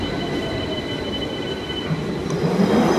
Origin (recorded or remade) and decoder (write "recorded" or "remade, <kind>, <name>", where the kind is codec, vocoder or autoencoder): recorded